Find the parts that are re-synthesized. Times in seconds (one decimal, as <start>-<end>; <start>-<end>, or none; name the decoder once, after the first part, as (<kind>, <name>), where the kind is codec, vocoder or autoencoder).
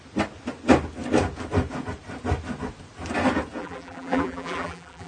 3.6-5.1 (vocoder, BigVGAN v2)